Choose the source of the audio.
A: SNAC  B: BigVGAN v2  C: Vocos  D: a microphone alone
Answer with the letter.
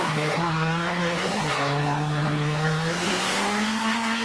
A